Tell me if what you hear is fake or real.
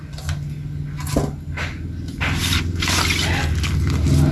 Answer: real